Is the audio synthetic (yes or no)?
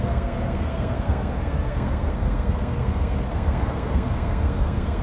yes